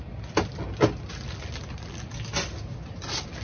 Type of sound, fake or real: real